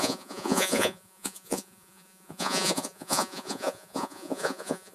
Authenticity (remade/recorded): remade